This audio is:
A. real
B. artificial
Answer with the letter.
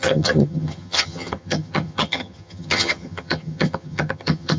B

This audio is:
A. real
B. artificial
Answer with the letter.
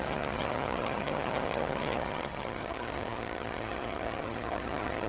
B